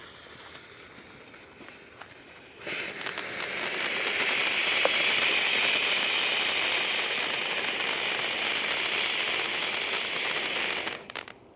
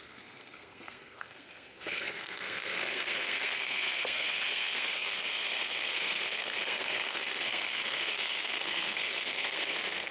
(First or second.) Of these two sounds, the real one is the first